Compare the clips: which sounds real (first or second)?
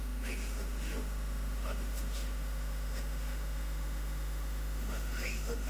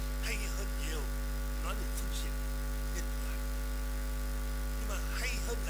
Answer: second